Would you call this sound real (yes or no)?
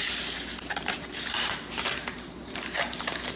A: no